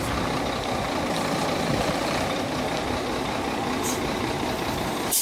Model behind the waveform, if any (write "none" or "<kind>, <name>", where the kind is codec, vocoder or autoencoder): none